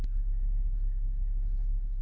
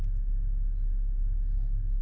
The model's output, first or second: first